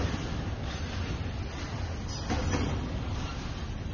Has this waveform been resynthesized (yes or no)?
no